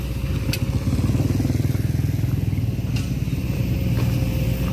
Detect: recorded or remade recorded